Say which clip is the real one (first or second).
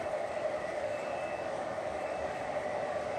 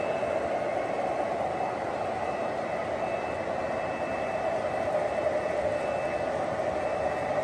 second